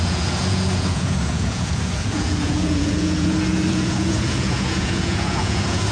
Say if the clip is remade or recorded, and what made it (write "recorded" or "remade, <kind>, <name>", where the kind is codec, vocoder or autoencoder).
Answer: remade, vocoder, Vocos